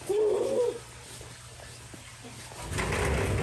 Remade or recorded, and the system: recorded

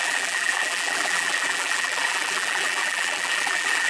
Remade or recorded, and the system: remade, vocoder, BigVGAN v2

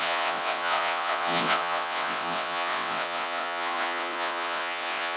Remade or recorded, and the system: remade, vocoder, WaveNeXt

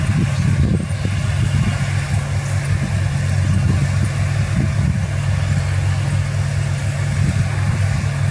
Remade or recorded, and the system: recorded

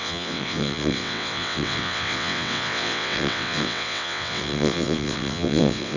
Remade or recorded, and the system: remade, vocoder, WaveNeXt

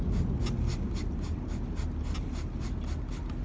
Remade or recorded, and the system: recorded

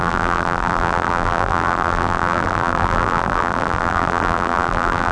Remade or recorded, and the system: remade, vocoder, BigVGAN v2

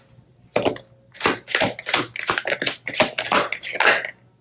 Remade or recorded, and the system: recorded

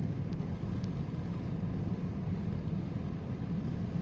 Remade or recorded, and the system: recorded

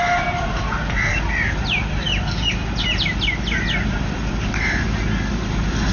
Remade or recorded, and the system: recorded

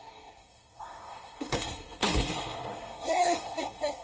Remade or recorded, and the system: remade, codec, SNAC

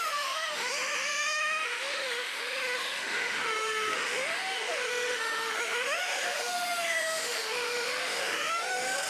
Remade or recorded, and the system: remade, autoencoder, DAC-VAE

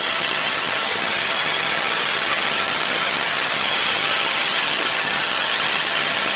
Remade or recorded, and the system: remade, vocoder, HiFi-GAN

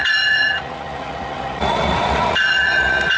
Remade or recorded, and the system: remade, vocoder, Vocos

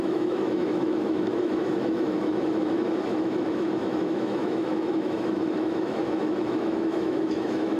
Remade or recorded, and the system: remade, autoencoder, DAC-VAE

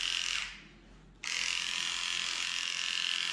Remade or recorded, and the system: recorded